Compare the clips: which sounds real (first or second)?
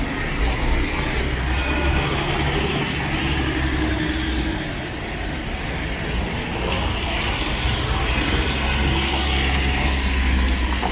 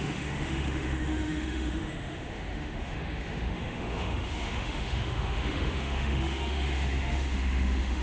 first